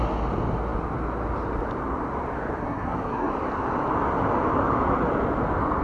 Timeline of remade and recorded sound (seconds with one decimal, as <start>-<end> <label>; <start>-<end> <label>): 0.0-2.6 recorded; 2.6-3.3 remade; 3.3-5.8 recorded